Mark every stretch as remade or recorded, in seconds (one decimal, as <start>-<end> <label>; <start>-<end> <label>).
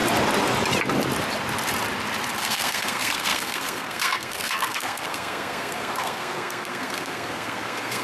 0.0-2.4 recorded; 2.4-8.0 remade